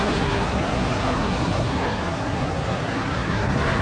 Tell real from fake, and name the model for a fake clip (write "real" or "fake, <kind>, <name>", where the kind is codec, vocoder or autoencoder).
fake, codec, SNAC